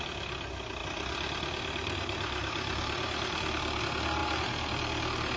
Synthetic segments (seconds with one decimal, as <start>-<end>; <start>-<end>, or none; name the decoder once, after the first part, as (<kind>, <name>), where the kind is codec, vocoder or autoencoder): 0.8-3.8 (vocoder, BigVGAN v2); 4.2-5.4